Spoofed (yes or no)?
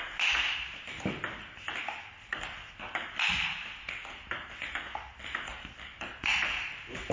no